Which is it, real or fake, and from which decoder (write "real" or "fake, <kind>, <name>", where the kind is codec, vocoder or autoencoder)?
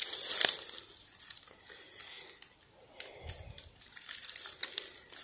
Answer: real